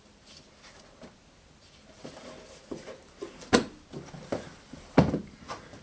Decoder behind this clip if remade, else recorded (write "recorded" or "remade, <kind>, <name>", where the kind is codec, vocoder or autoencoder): recorded